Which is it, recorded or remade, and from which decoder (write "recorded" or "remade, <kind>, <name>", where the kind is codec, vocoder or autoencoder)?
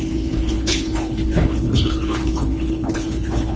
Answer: remade, codec, HILCodec